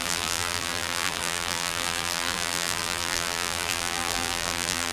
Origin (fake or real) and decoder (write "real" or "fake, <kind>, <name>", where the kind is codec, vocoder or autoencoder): fake, vocoder, BigVGAN v2